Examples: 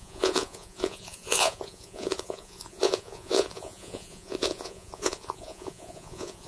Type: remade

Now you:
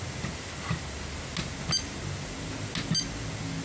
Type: recorded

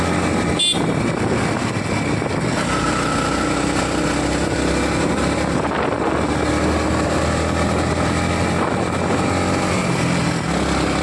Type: recorded